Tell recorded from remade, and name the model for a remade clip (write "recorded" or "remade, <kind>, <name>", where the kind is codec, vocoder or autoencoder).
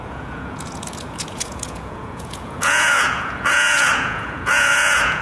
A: remade, vocoder, Vocos